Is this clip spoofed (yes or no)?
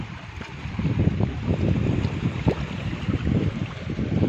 yes